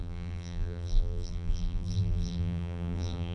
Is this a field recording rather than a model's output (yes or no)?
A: no